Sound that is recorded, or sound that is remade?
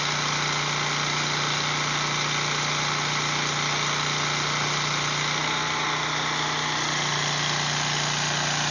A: recorded